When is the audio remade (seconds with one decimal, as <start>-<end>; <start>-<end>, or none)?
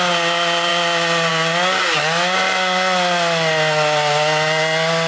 none